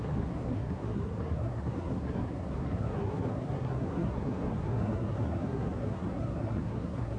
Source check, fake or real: fake